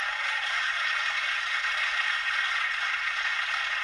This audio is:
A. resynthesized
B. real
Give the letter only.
A